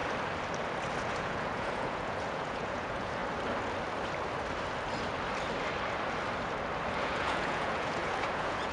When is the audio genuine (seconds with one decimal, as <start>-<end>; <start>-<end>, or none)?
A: 0.0-1.0; 3.2-7.0